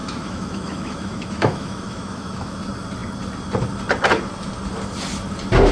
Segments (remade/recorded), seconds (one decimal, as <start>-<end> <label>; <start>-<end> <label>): 0.0-2.6 remade; 2.6-5.7 recorded